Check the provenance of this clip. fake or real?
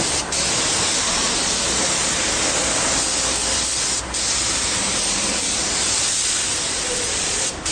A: fake